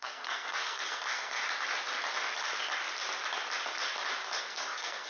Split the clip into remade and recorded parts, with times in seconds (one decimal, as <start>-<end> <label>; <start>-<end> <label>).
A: 0.0-1.4 remade; 1.4-4.4 recorded; 4.4-5.1 remade